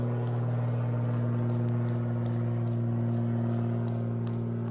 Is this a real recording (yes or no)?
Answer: yes